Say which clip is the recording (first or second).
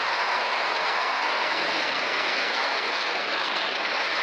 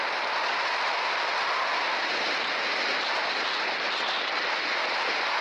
second